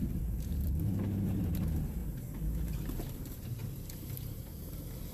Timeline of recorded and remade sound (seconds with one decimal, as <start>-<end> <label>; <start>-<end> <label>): 0.0-2.0 remade; 2.0-2.9 recorded; 2.9-3.6 remade; 3.6-4.4 recorded; 4.4-5.1 remade